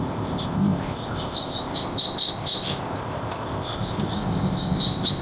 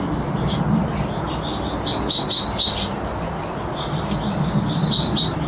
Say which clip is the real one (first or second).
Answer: second